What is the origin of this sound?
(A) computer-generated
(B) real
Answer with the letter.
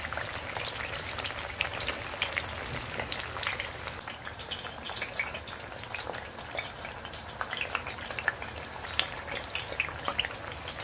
B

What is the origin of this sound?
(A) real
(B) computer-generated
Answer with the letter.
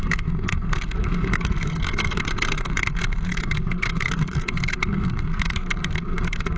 B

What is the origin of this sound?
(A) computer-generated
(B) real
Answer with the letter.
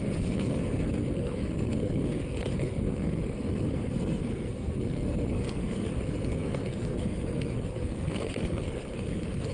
A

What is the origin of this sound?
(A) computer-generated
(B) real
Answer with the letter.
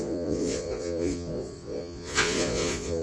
A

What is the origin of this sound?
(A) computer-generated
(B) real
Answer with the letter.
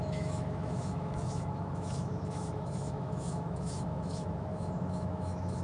A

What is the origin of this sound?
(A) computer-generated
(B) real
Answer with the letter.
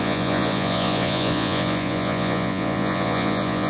A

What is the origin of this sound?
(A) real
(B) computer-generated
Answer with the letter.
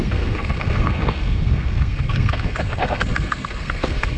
B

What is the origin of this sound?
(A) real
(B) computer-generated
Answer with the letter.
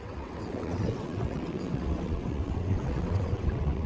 B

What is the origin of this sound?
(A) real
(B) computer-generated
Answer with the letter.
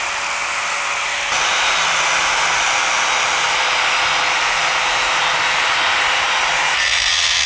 A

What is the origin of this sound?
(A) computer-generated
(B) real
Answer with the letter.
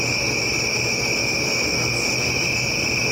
B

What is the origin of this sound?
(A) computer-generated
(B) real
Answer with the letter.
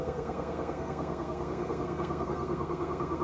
A